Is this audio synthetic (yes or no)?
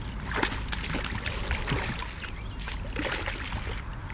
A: no